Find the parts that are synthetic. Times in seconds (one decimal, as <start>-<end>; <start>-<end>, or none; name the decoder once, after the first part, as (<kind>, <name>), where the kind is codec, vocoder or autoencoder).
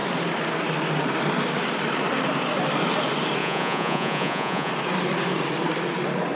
3.4-4.7 (vocoder, Vocos)